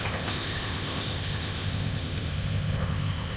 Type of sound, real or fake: fake